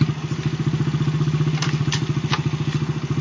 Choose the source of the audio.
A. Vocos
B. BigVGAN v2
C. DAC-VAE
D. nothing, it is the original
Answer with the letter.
D